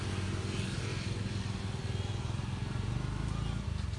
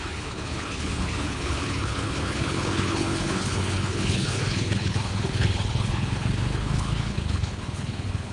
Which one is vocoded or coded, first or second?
second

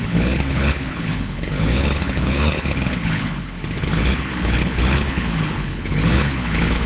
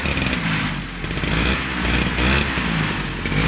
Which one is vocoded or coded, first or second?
first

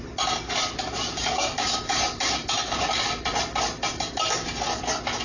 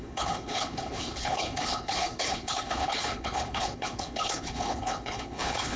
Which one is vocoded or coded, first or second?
second